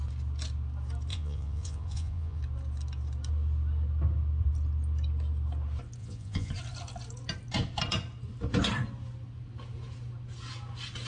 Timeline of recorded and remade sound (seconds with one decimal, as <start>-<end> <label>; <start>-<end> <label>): 0.0-1.1 recorded; 1.1-2.4 remade; 2.4-6.0 recorded; 6.0-6.5 remade; 6.5-11.1 recorded